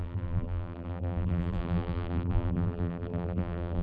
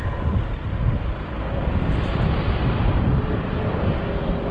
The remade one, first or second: first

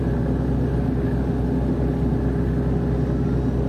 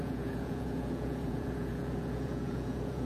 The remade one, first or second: second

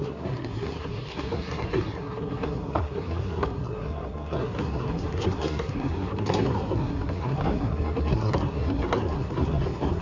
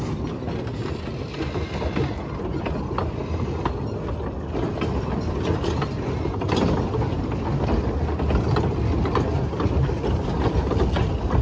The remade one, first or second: first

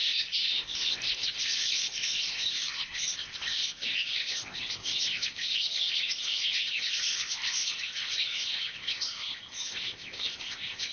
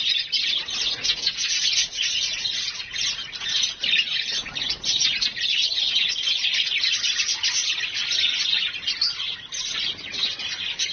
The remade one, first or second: first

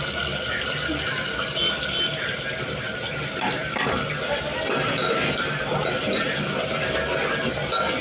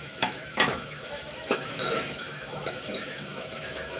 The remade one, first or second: second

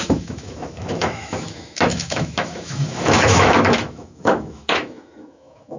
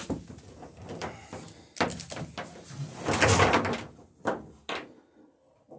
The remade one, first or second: first